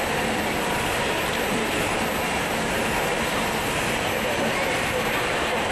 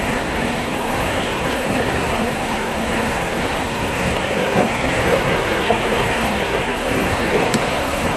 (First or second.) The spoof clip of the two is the second